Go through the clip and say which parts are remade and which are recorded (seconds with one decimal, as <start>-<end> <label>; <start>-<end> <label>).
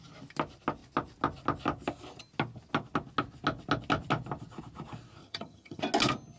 0.0-5.2 recorded; 5.2-5.8 remade; 5.8-6.4 recorded